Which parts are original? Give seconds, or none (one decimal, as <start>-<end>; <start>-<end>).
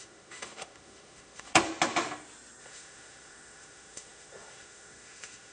1.6-2.6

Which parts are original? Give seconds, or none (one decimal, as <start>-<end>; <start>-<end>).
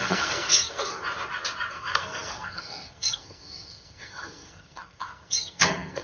1.0-1.7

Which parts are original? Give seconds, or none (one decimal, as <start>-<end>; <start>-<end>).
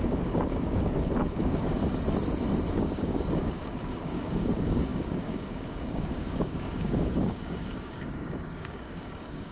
1.8-2.7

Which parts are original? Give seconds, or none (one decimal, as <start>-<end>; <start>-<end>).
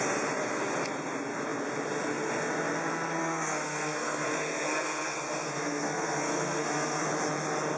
0.0-3.2; 7.1-7.8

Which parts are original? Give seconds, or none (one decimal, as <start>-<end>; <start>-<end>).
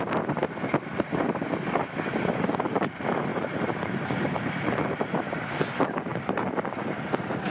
0.0-3.3; 5.3-6.1; 7.0-7.5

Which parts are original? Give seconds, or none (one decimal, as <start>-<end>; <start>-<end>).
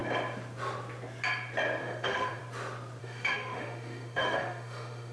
0.0-1.8; 2.4-3.0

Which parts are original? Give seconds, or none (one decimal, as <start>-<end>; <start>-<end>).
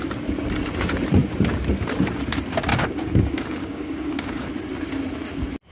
0.0-2.7; 4.4-5.7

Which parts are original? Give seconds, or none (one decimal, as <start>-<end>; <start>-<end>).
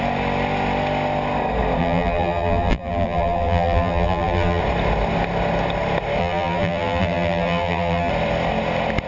0.0-1.8; 4.6-6.2; 8.1-9.1